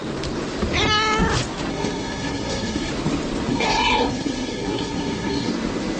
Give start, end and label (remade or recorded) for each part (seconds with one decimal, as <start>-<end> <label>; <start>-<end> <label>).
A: 0.0-1.7 recorded; 1.7-2.9 remade; 2.9-3.5 recorded; 3.5-5.5 remade; 5.5-6.0 recorded

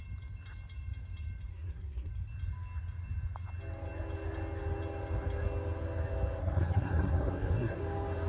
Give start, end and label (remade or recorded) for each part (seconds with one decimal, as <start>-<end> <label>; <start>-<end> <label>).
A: 0.0-1.5 recorded; 1.5-2.1 remade; 2.1-6.4 recorded; 6.4-7.8 remade; 7.8-8.3 recorded

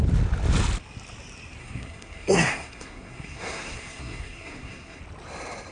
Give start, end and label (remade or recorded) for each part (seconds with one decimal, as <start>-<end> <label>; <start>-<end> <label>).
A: 0.0-1.6 recorded; 1.6-5.0 remade; 5.0-5.7 recorded

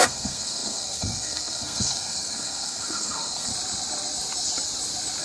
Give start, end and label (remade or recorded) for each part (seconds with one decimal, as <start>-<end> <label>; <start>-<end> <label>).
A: 0.0-3.5 remade; 3.5-5.2 recorded